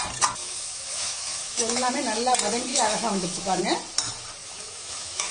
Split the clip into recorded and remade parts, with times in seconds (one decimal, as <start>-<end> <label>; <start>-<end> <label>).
0.0-0.4 recorded; 0.4-1.9 remade; 1.9-2.7 recorded; 2.7-3.6 remade; 3.6-4.4 recorded; 4.4-5.3 remade